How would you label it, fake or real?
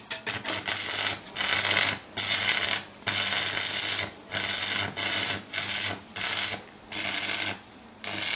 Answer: real